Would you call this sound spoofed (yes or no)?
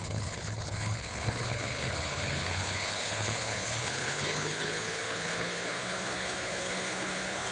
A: yes